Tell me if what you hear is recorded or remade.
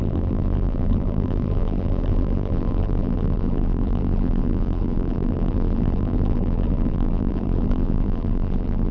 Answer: remade